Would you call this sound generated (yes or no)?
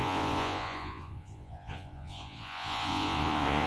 yes